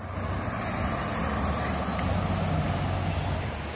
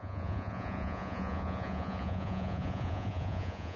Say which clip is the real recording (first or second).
first